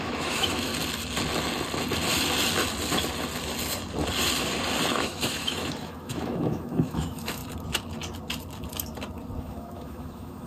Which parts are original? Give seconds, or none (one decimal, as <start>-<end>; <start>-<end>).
0.7-4.9; 7.4-9.4

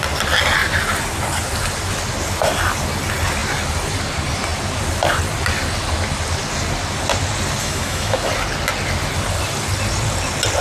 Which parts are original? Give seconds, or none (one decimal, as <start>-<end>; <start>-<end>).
0.0-7.6; 8.3-10.6

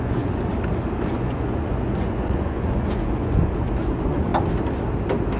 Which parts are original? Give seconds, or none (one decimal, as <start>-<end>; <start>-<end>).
0.5-1.1; 4.3-5.4

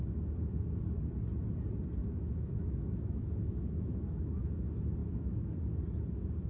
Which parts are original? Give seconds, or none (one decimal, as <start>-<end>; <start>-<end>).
0.0-2.0; 4.5-5.0; 5.6-6.5

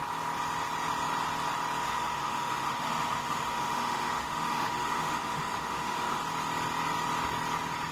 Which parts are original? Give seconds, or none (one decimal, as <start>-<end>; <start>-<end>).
0.0-1.8; 6.2-7.9

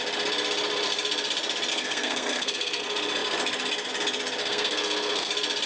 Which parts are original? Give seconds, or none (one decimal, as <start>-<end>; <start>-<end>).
0.0-1.7; 2.8-4.4; 5.3-5.7

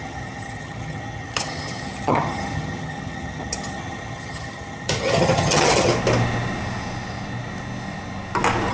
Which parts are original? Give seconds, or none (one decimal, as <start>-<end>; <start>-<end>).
5.9-8.7